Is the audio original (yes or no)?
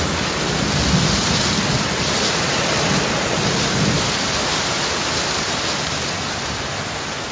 yes